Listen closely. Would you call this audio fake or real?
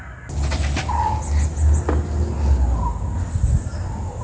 real